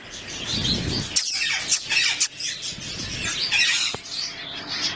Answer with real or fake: real